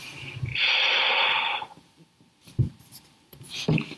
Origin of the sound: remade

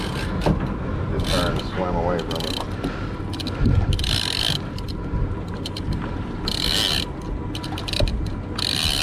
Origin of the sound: recorded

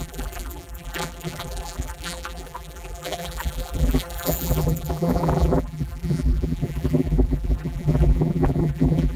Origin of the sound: remade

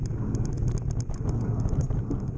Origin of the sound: recorded